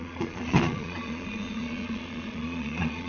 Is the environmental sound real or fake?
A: fake